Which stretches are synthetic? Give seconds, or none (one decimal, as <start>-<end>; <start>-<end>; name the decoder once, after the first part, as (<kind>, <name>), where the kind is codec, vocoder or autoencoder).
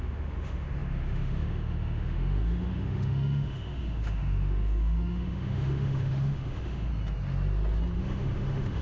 0.0-6.9 (autoencoder, DAC-VAE); 8.0-8.8